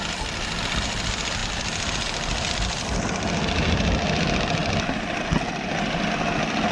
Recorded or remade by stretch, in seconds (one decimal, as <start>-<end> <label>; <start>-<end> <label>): 0.0-6.7 recorded